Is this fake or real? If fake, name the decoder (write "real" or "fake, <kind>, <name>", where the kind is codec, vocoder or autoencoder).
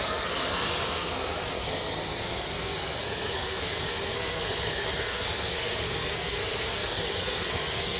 fake, codec, SNAC